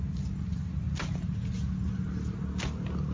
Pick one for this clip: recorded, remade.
recorded